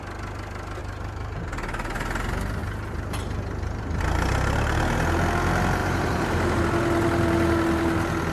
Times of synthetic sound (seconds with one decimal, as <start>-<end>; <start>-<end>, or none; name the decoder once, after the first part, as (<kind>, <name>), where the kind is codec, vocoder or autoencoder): 0.8-1.4 (vocoder, BigVGAN v2); 2.6-4.0; 5.8-6.6